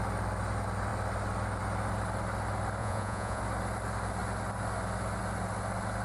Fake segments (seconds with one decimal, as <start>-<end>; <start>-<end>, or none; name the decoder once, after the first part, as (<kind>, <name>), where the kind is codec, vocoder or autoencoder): 2.8-3.4 (vocoder, Vocos)